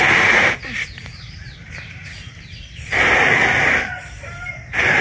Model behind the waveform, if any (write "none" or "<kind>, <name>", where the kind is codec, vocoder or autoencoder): vocoder, BigVGAN v2